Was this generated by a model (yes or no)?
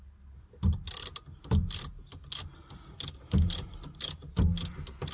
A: no